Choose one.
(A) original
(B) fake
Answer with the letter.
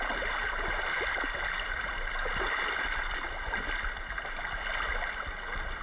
A